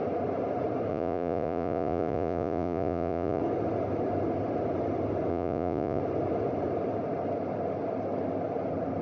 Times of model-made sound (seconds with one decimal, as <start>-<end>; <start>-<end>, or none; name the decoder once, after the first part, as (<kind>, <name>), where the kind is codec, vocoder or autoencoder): 0.9-3.4 (vocoder, Vocos); 5.3-6.0